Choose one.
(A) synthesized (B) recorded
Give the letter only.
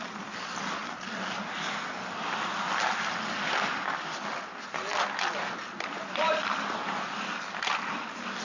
B